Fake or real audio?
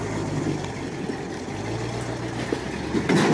real